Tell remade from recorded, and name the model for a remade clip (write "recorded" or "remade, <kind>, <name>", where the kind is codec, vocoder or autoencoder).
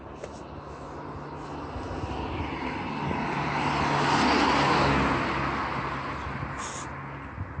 recorded